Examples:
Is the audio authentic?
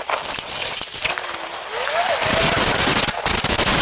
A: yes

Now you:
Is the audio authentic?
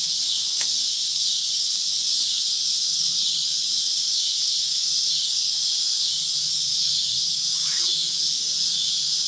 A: no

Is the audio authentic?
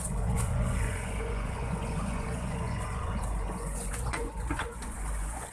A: no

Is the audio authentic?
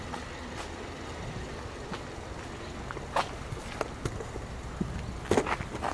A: yes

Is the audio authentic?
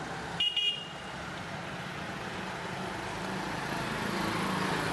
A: yes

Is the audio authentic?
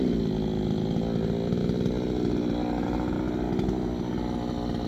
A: yes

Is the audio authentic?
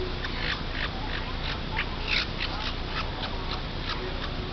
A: yes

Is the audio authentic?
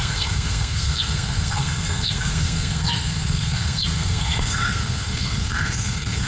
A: no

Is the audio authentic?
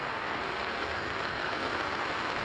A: no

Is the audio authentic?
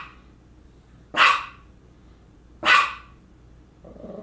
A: yes